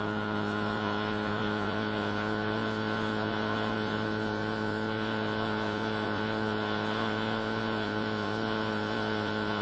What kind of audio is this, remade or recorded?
remade